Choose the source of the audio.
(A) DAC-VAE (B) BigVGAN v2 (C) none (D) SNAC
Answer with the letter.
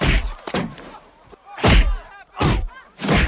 C